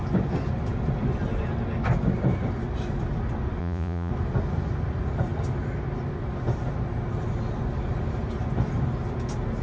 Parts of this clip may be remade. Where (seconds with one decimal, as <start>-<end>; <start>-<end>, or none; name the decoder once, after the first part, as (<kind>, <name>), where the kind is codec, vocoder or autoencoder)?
3.6-4.1 (vocoder, Vocos)